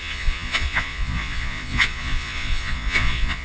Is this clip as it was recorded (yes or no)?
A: no